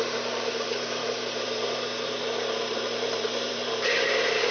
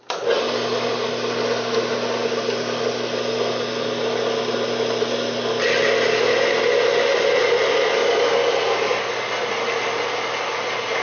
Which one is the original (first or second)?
second